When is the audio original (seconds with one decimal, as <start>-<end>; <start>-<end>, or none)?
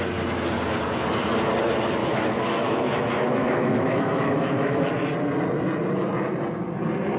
0.0-2.0; 4.9-7.2